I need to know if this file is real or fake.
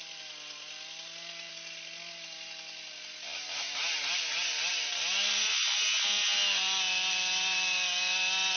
real